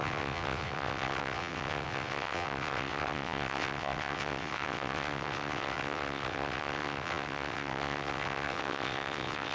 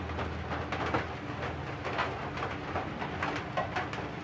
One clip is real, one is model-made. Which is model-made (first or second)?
first